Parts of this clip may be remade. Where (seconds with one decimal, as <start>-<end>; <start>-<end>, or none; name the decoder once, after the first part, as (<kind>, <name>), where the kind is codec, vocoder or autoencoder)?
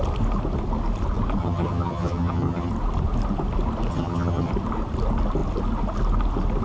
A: 1.4-2.7 (vocoder, HiFi-GAN); 3.9-4.5